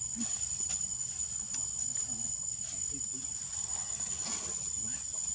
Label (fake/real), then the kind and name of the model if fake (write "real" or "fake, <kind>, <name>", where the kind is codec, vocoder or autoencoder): real